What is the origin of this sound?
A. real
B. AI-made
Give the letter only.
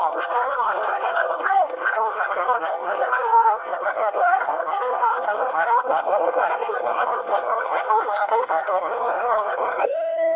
B